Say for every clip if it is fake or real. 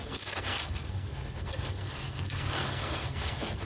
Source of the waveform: fake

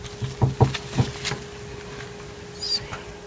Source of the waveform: real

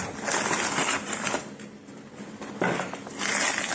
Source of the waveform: real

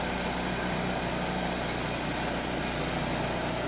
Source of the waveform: real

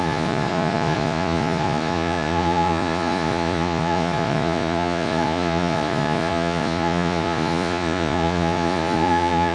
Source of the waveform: fake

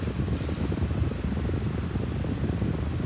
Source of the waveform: real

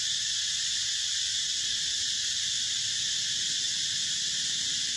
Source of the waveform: real